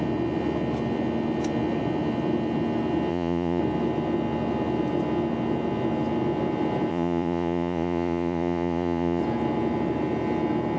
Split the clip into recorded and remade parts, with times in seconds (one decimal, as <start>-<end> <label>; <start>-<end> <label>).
0.0-3.1 recorded; 3.1-3.6 remade; 3.6-6.9 recorded; 6.9-9.2 remade; 9.2-10.8 recorded